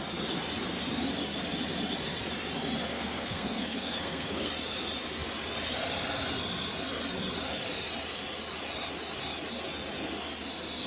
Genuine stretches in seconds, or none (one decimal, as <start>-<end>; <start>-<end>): 0.0-2.9; 4.5-10.9